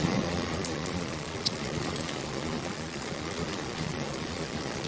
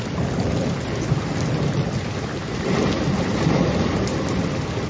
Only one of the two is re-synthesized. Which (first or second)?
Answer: first